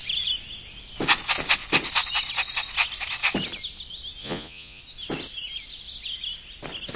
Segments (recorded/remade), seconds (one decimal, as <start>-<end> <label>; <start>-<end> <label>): 0.0-4.2 recorded; 4.2-4.8 remade; 4.8-7.0 recorded